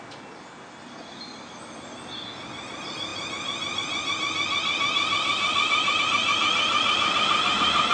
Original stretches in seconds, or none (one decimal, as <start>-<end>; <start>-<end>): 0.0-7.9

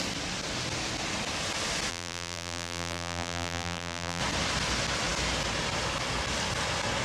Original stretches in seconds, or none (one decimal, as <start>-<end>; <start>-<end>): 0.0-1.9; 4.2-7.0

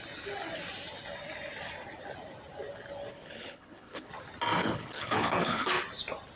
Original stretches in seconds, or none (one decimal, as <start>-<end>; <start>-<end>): 0.0-3.1; 4.1-4.6; 5.7-6.4

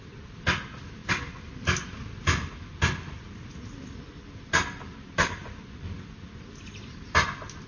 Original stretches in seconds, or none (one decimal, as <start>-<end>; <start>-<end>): 0.0-7.7

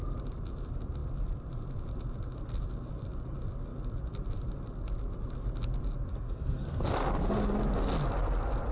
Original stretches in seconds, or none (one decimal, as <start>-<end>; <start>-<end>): 0.0-6.1; 6.9-8.7